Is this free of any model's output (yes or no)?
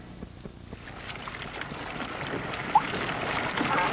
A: yes